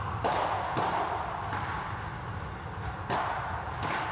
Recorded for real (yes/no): yes